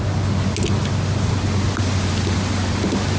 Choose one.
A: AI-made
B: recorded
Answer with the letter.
B